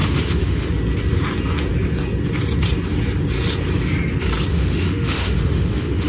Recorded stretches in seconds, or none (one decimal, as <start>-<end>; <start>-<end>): 0.7-4.5